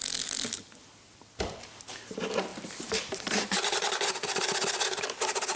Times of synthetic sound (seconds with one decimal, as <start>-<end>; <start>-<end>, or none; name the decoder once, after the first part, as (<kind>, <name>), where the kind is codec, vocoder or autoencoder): none